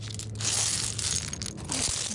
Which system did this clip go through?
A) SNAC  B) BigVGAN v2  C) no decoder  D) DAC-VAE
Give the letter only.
C